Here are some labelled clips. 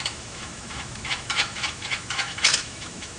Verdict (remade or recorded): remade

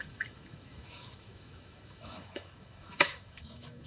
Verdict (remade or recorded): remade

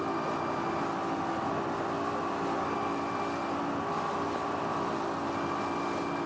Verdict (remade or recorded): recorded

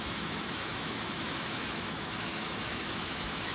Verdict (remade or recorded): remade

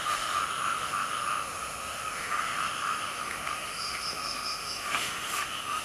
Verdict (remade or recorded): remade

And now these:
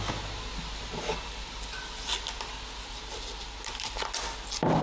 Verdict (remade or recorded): recorded